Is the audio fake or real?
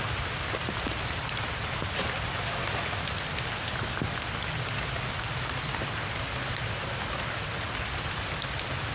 real